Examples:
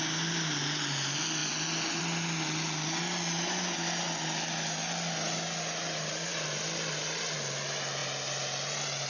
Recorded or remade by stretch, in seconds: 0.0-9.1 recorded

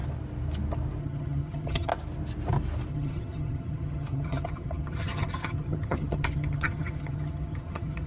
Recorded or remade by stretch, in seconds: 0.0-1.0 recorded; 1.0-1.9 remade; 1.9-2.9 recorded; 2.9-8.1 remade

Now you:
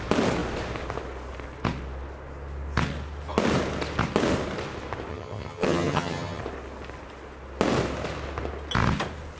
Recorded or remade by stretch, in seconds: 0.0-5.1 recorded; 5.1-6.4 remade; 6.4-9.4 recorded

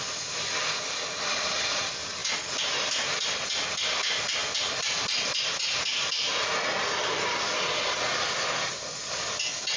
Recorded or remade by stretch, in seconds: 0.0-9.8 recorded